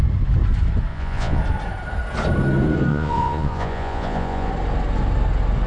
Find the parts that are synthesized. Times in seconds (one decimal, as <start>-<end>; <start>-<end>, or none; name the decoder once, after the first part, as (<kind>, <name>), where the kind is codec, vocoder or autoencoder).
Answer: 0.9-1.4 (vocoder, Vocos); 2.9-4.5